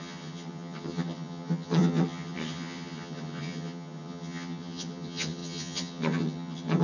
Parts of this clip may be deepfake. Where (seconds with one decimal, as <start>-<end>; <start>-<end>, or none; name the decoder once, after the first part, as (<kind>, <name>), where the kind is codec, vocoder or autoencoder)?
0.0-6.8 (vocoder, HiFi-GAN)